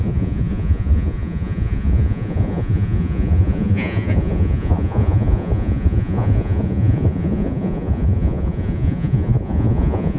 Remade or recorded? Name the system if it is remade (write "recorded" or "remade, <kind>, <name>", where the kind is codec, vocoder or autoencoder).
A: remade, vocoder, Vocos